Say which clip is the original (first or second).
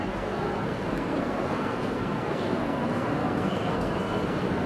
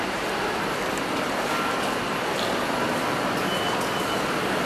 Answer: second